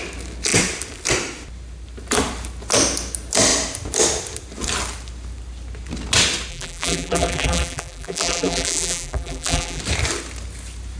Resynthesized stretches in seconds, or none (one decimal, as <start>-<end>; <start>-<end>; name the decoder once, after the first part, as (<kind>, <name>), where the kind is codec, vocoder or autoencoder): 6.5-9.8 (vocoder, BigVGAN v2)